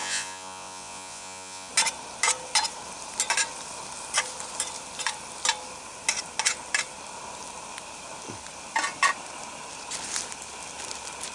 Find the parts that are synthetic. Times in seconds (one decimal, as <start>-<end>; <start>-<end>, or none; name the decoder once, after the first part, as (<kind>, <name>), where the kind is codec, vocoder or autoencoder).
0.0-1.7 (vocoder, Vocos)